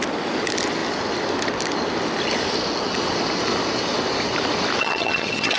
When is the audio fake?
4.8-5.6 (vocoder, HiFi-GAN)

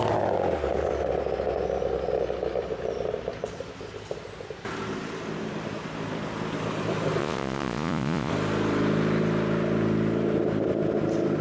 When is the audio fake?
7.2-8.3 (vocoder, Vocos)

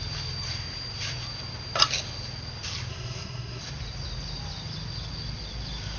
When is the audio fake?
2.9-3.6 (codec, SNAC)

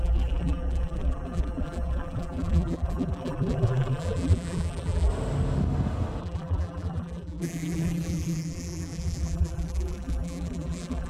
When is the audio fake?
0.0-5.1 (vocoder, BigVGAN v2); 6.2-11.1

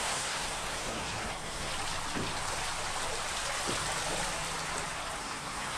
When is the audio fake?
0.0-1.7 (codec, SNAC); 5.2-5.8

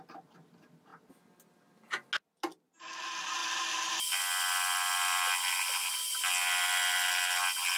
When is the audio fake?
3.4-4.2 (vocoder, BigVGAN v2)

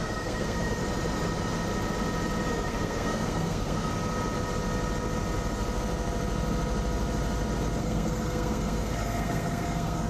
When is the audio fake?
0.0-0.8 (codec, SNAC); 2.5-3.9; 7.8-10.1

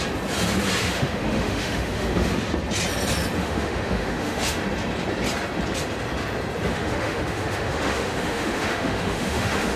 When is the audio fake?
0.8-2.3 (autoencoder, DAC-VAE); 3.4-4.6; 6.7-9.8